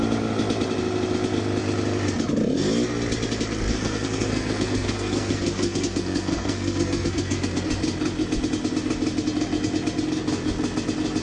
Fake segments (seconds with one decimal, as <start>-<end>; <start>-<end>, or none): 3.7-7.7